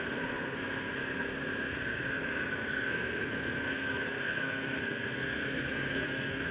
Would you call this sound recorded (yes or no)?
no